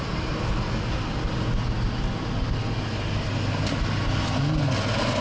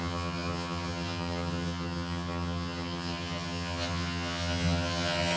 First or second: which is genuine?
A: first